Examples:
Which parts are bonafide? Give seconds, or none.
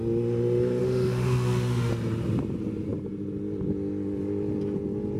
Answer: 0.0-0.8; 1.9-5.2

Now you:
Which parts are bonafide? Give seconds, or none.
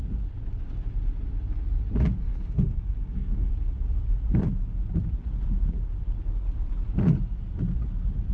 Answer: 0.0-2.2; 3.5-8.3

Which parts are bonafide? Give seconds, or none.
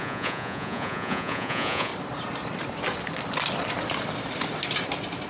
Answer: 1.9-5.3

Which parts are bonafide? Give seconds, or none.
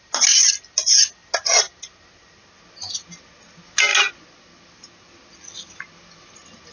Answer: 0.0-6.7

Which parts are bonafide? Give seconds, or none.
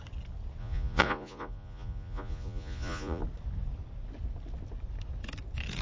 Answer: 0.0-0.6; 3.2-5.8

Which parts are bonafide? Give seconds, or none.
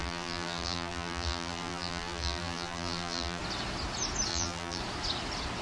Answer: 3.4-4.3; 4.8-5.6